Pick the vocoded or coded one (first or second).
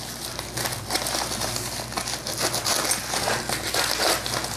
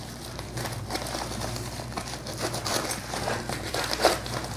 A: second